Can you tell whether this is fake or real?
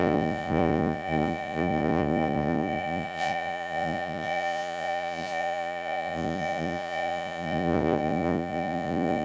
fake